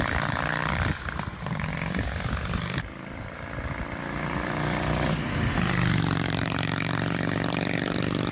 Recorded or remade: remade